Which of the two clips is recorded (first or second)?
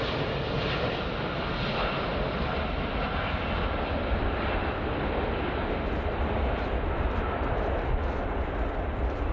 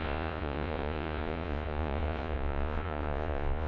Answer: first